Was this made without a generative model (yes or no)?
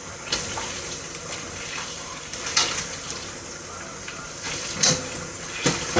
yes